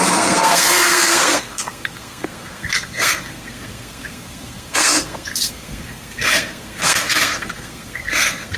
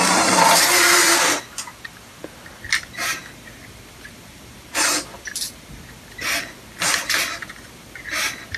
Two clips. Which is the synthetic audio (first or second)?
first